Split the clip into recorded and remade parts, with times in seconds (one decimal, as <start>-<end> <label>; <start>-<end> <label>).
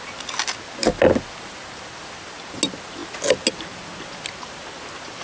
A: 0.0-5.2 recorded